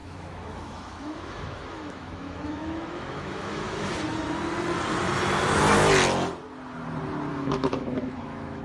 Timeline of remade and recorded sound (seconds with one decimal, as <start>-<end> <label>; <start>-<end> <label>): 0.0-3.9 remade; 3.9-7.3 recorded; 7.3-8.6 remade